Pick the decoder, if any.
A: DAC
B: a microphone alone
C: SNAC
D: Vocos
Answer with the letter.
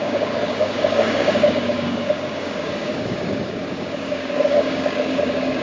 A